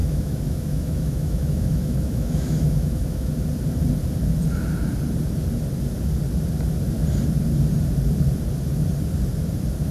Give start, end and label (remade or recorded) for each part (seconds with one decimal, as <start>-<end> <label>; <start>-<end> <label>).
0.0-3.3 remade; 3.3-9.9 recorded